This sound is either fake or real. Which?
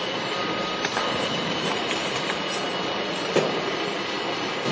fake